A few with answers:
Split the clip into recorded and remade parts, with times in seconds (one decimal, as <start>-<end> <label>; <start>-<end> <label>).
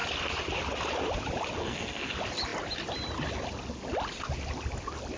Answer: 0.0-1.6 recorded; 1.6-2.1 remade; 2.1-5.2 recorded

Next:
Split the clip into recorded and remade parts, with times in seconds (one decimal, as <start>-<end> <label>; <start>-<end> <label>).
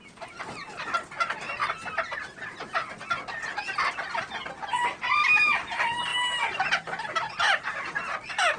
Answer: 0.0-8.6 recorded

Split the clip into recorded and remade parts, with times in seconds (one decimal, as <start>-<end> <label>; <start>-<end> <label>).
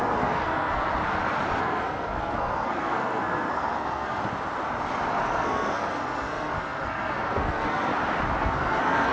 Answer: 0.0-0.9 remade; 0.9-1.6 recorded; 1.6-4.2 remade; 4.2-5.1 recorded; 5.1-7.9 remade; 7.9-8.4 recorded; 8.4-9.1 remade